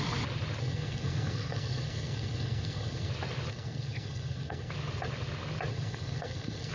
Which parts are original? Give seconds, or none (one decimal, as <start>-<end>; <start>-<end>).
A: 0.0-0.6; 3.1-3.5; 4.7-5.7